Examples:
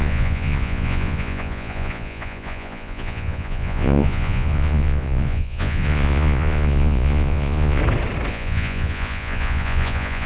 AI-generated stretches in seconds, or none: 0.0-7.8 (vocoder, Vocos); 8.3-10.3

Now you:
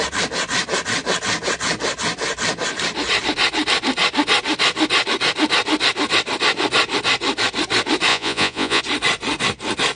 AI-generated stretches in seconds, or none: 8.1-8.8 (vocoder, Vocos)